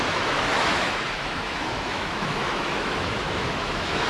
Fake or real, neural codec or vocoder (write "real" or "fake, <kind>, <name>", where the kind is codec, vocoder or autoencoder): fake, autoencoder, DAC-VAE